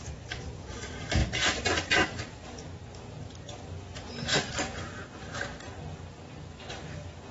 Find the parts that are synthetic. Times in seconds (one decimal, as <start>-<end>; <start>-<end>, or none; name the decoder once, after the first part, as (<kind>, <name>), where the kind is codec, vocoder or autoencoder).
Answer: 1.2-2.2 (vocoder, BigVGAN v2); 4.3-6.8